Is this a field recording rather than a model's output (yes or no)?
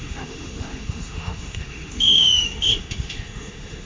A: no